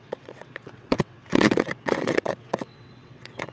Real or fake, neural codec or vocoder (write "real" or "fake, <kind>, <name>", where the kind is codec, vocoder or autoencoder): fake, vocoder, WaveNeXt